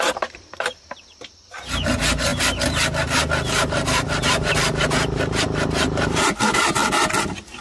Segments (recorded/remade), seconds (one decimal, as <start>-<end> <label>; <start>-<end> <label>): 0.0-2.3 remade; 2.3-4.5 recorded; 4.5-6.8 remade; 6.8-7.6 recorded